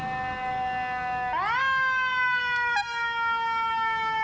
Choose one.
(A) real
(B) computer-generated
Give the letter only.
A